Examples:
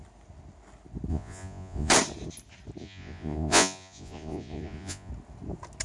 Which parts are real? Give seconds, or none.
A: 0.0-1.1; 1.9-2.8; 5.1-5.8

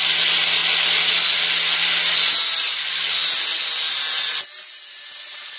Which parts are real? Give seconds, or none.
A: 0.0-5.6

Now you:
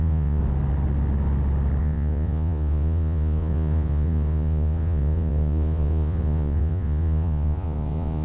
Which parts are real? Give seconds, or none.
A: 0.4-1.8

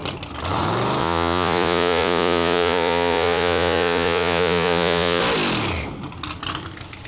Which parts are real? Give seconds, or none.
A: 0.0-1.0; 5.2-7.1

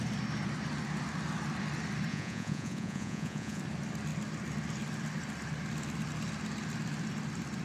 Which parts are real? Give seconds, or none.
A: 0.0-2.1; 3.6-7.6